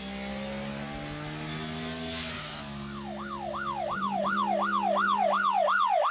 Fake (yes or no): no